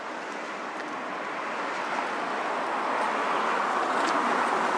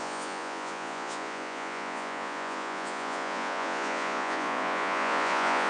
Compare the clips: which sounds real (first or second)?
first